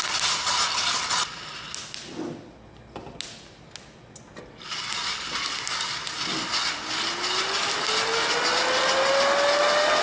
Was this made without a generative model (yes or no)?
yes